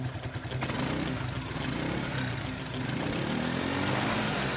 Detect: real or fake real